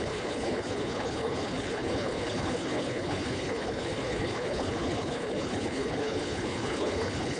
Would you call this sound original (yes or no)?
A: no